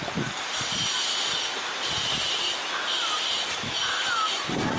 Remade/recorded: recorded